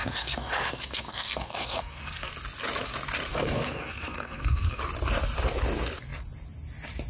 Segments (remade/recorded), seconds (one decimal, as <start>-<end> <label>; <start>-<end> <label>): 0.0-2.3 remade; 2.3-3.3 recorded; 3.3-4.8 remade; 4.8-7.1 recorded